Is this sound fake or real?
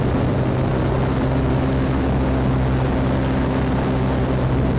real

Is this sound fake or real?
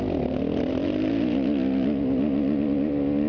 real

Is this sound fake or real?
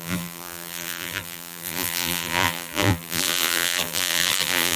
fake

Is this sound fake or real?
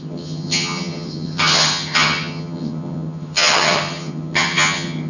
fake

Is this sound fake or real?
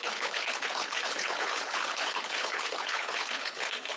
fake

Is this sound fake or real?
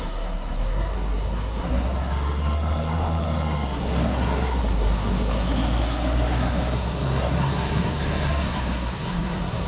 fake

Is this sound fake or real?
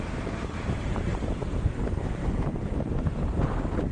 fake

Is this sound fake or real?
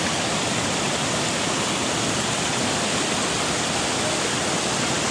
real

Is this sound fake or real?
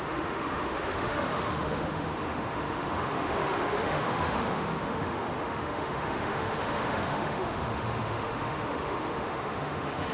fake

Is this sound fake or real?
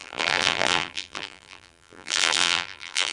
fake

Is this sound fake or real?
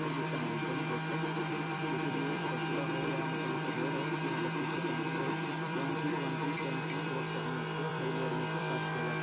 fake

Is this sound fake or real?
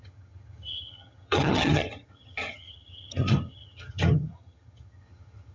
fake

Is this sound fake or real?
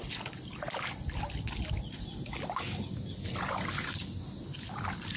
real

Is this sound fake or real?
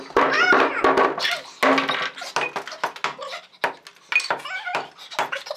real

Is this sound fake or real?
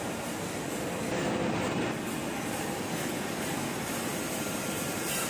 real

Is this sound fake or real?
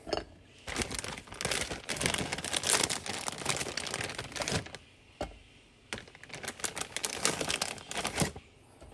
real